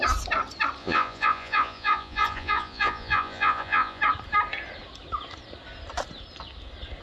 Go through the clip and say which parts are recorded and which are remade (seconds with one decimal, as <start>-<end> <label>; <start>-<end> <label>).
0.0-0.8 recorded; 0.8-4.0 remade; 4.0-7.0 recorded